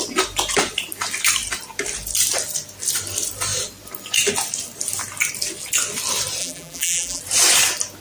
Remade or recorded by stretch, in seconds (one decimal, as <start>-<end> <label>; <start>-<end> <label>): 0.0-6.4 recorded; 6.4-7.2 remade; 7.2-8.0 recorded